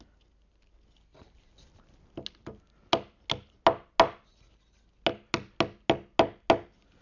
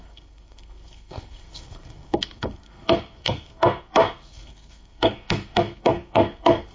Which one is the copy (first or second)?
second